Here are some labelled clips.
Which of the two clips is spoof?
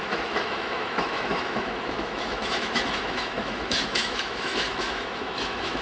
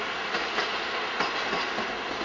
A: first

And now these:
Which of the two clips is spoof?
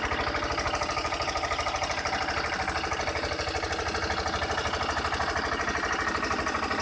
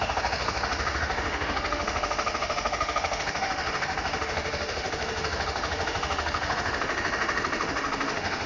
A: second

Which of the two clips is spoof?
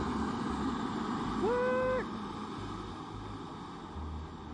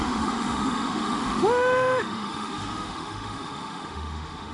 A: second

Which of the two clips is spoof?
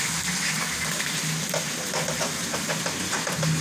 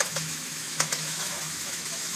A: second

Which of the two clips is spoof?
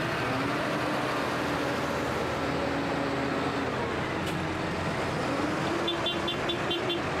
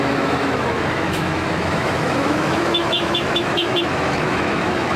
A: second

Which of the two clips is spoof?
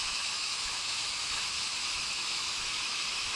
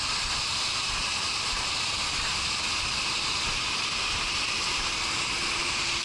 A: first